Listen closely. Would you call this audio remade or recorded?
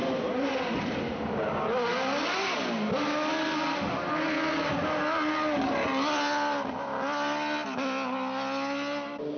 recorded